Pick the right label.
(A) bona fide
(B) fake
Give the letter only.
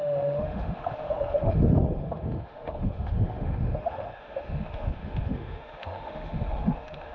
B